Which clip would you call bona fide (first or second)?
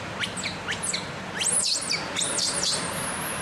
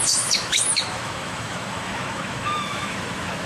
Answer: first